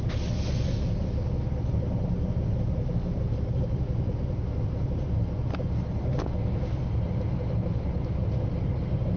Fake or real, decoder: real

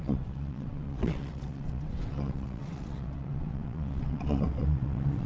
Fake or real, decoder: fake, vocoder, WaveNeXt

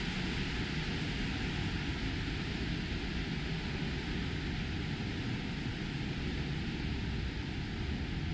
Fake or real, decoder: real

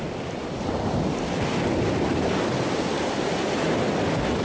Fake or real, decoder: real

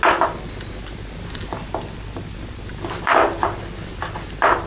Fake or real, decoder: real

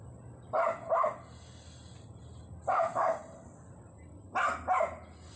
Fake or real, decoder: real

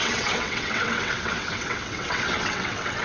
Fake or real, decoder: fake, vocoder, WaveNeXt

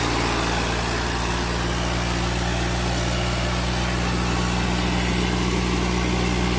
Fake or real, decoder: real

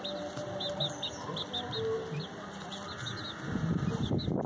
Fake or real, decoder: real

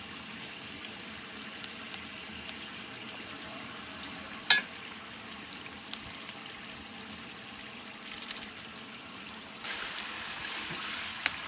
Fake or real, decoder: real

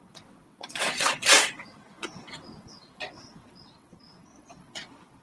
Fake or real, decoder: fake, vocoder, WaveNeXt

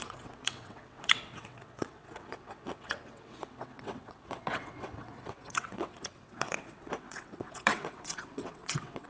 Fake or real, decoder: fake, vocoder, WaveNeXt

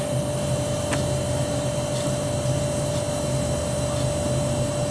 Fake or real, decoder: real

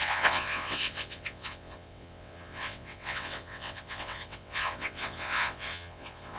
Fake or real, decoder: fake, vocoder, WaveNeXt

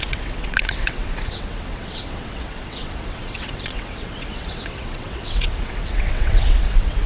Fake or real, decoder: fake, vocoder, WaveNeXt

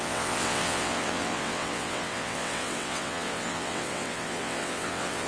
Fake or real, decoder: fake, vocoder, WaveNeXt